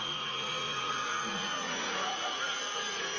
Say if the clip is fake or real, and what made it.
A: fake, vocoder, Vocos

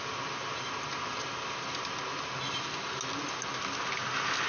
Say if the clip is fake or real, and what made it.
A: real